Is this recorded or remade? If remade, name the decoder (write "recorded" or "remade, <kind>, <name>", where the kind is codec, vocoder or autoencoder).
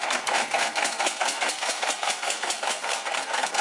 remade, codec, SNAC